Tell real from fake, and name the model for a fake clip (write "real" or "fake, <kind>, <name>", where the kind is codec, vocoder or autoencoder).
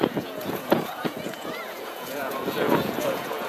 fake, vocoder, Vocos